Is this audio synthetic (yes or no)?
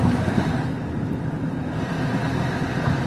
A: no